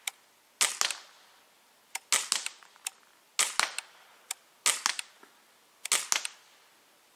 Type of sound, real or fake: real